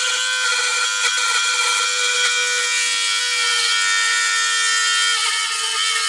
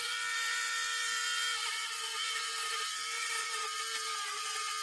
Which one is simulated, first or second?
second